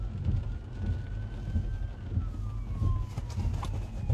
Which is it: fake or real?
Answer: real